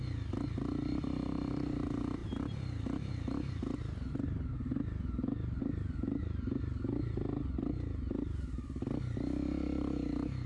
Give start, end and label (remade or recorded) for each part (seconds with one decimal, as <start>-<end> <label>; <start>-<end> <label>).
0.0-10.5 recorded